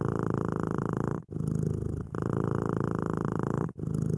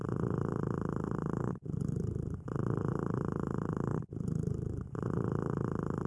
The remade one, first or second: second